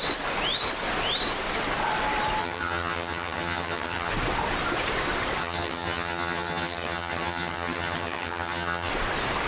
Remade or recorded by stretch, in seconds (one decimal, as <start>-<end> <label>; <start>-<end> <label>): 0.0-2.4 recorded; 2.4-4.1 remade; 4.1-5.4 recorded; 5.4-8.9 remade; 8.9-9.5 recorded